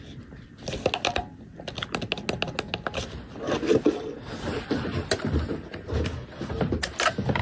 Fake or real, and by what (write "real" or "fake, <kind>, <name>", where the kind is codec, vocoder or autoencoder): real